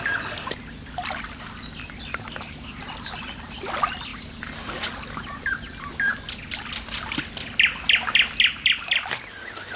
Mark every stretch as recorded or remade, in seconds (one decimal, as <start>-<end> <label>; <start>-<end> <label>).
0.0-9.8 recorded